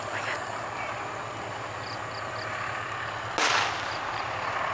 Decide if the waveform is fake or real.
real